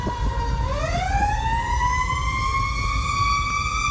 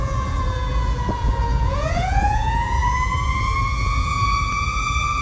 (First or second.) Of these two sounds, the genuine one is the first